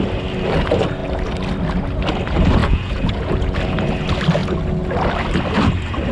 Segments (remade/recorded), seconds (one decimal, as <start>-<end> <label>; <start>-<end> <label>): 0.0-2.6 recorded; 2.6-3.6 remade; 3.6-6.1 recorded